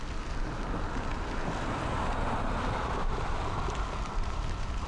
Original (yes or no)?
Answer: yes